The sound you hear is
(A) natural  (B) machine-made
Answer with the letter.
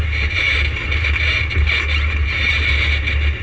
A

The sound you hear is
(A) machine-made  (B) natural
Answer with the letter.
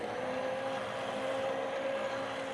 B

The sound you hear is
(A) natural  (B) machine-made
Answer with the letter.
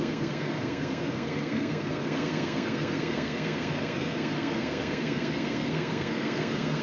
B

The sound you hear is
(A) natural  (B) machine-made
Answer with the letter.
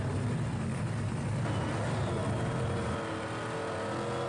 A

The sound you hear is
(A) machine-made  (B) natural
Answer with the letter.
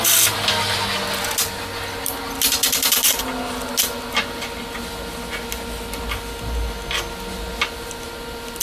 B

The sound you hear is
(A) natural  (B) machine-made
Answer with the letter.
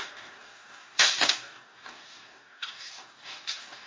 B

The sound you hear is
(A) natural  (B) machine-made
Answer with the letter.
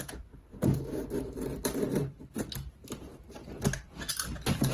B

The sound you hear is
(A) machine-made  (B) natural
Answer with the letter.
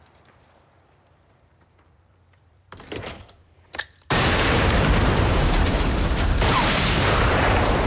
A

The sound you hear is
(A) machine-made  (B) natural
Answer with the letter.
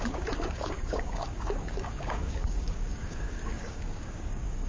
A